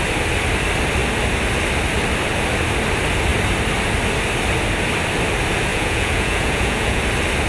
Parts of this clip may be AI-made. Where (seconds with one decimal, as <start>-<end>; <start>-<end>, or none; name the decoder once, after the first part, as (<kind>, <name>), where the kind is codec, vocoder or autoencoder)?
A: 5.7-7.0 (vocoder, Vocos)